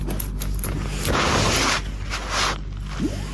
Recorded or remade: recorded